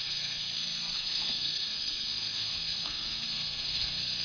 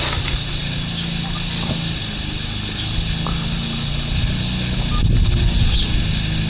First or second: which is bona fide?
second